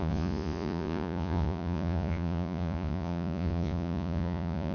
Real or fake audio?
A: fake